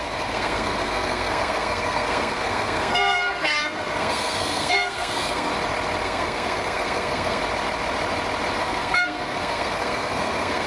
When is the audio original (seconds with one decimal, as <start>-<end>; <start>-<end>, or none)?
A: 5.5-6.0; 7.4-8.6